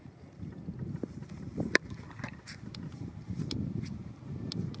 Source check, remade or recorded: recorded